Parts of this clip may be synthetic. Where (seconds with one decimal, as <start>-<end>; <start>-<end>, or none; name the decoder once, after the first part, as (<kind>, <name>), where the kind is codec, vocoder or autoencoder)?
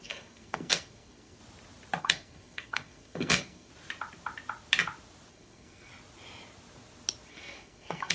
0.0-1.4 (codec, SNAC); 2.0-3.7; 5.3-5.9; 7.3-8.1